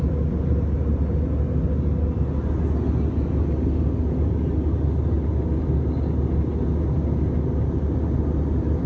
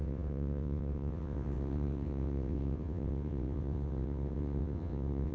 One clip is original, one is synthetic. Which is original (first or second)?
first